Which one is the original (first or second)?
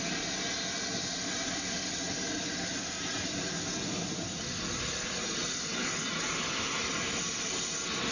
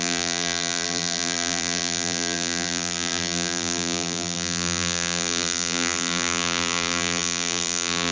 first